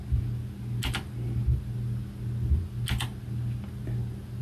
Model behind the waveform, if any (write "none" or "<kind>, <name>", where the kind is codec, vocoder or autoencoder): none